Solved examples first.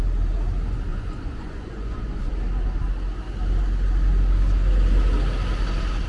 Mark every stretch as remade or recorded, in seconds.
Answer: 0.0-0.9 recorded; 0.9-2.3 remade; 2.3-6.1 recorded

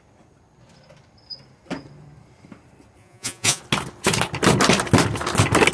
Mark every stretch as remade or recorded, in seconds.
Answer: 0.0-3.0 recorded; 3.0-3.6 remade; 3.6-5.7 recorded

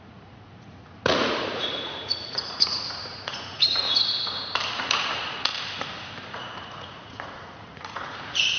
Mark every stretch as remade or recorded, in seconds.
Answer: 0.0-3.8 remade; 3.8-4.7 recorded; 4.7-5.5 remade; 5.5-6.3 recorded; 6.3-8.6 remade

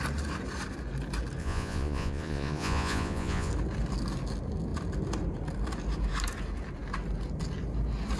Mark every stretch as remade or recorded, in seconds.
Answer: 0.0-1.4 recorded; 1.4-3.5 remade; 3.5-8.2 recorded

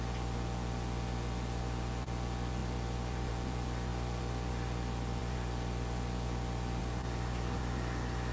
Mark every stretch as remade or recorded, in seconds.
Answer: 0.0-8.3 recorded

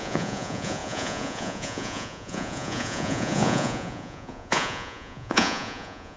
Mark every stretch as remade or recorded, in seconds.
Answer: 0.0-6.2 remade

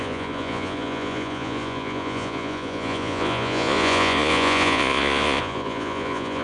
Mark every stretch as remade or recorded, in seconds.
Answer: 0.0-6.4 remade